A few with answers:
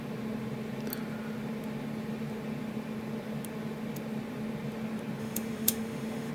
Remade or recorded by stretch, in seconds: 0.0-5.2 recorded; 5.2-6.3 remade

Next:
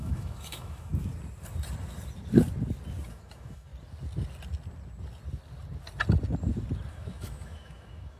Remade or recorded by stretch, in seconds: 0.0-0.9 remade; 0.9-3.1 recorded; 3.1-3.7 remade; 3.7-6.9 recorded; 6.9-8.2 remade

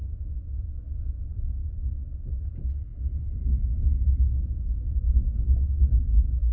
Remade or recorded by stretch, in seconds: 0.0-1.6 remade; 1.6-2.4 recorded; 2.4-2.9 remade; 2.9-5.8 recorded; 5.8-6.5 remade